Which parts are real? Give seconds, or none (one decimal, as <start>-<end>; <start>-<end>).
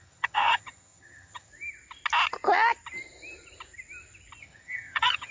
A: 1.5-4.4